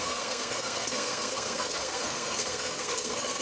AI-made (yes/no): yes